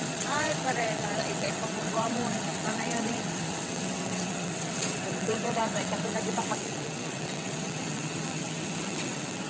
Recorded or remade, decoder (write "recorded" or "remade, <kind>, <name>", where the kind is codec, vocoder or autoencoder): remade, vocoder, WaveNeXt